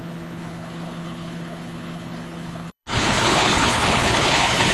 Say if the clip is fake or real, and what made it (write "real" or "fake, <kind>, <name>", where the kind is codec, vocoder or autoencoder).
fake, codec, HILCodec